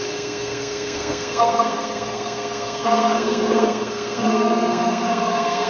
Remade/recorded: remade